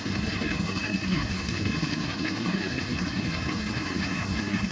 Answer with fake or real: fake